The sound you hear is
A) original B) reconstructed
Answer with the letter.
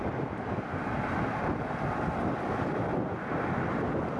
A